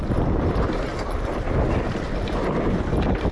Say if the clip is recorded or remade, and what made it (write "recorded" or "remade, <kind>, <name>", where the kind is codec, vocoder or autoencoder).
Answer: recorded